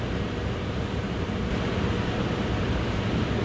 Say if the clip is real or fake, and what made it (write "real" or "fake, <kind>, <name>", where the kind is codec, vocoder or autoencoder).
real